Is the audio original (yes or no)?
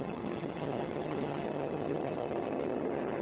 no